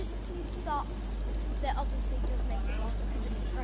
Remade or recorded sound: recorded